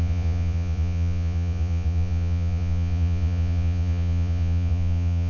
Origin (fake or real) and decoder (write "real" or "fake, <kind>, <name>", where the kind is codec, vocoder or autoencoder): fake, vocoder, Vocos